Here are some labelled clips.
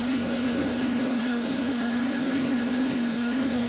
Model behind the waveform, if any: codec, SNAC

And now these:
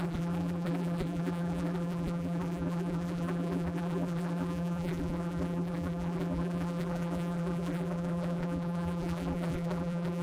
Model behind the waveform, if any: vocoder, BigVGAN v2